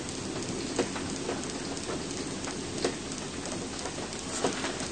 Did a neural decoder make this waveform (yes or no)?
no